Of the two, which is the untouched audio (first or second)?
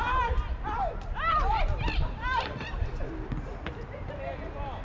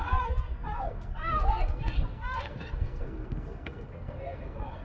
first